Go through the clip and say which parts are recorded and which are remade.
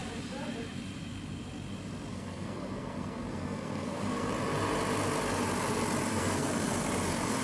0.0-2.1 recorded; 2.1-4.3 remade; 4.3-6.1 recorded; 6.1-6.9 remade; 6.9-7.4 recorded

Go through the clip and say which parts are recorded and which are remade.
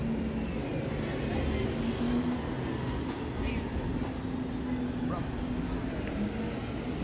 0.0-7.0 recorded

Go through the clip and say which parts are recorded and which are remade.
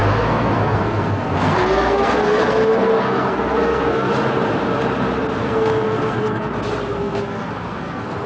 0.0-4.1 remade; 4.1-5.4 recorded; 5.4-6.5 remade; 6.5-6.9 recorded; 6.9-8.3 remade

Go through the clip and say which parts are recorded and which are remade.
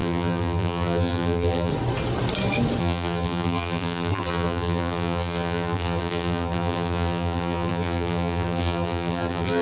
0.0-1.7 remade; 1.7-2.8 recorded; 2.8-9.6 remade